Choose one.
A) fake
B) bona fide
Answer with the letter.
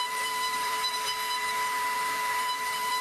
A